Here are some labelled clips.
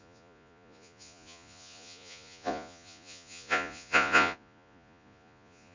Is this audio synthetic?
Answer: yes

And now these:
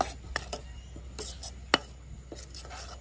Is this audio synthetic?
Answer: no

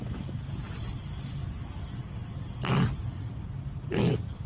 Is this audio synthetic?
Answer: no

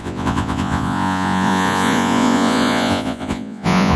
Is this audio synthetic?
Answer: yes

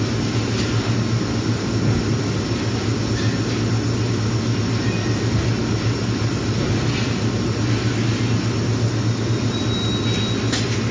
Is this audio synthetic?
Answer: no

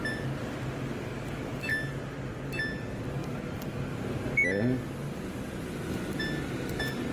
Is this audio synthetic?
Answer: no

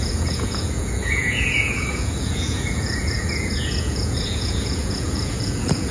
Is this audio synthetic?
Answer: yes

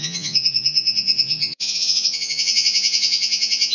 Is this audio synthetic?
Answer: yes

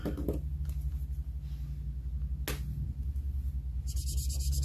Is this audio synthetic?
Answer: no